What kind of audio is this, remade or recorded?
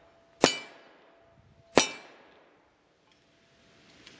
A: recorded